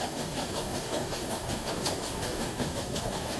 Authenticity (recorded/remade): remade